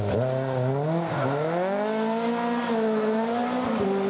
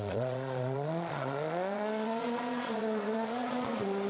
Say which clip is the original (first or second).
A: first